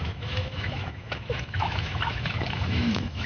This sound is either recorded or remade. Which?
remade